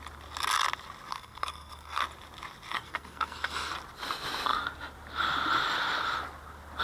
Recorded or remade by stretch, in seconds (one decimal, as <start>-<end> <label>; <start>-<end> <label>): 0.0-1.1 recorded; 1.1-2.0 remade; 2.0-2.7 recorded; 2.7-3.7 remade; 3.7-6.8 recorded